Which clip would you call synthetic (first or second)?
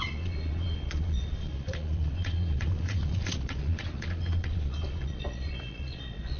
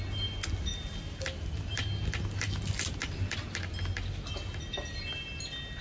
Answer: first